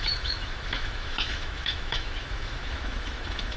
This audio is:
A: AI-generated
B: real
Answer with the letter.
A